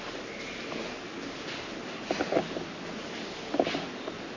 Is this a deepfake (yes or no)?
no